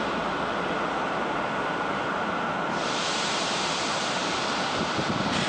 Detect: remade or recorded remade